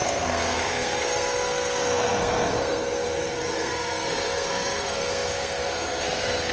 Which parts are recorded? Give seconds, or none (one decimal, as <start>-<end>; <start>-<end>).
none